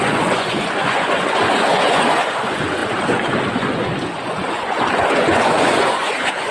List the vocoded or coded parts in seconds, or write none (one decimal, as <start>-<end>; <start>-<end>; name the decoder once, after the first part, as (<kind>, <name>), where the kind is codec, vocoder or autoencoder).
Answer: 0.0-6.5 (vocoder, Vocos)